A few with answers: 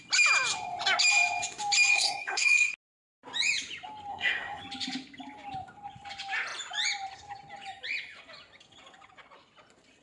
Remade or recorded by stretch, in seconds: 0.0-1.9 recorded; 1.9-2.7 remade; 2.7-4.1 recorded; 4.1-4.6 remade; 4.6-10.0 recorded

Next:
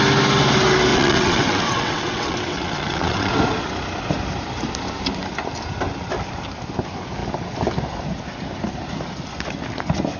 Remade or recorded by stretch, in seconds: 0.0-0.9 recorded; 0.9-3.3 remade; 3.3-10.2 recorded

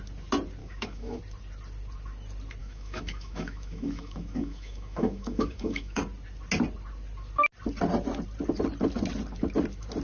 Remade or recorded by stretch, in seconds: 0.0-0.6 recorded; 0.6-1.2 remade; 1.2-2.6 recorded; 2.6-6.0 remade; 6.0-10.0 recorded

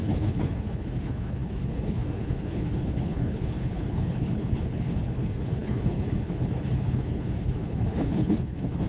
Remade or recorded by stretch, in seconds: 0.0-8.9 remade

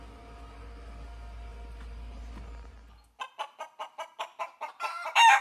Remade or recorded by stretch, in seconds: 0.0-5.4 recorded